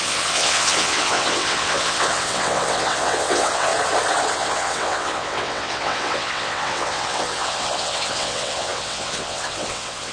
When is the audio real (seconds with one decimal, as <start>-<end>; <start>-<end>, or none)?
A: 3.7-4.3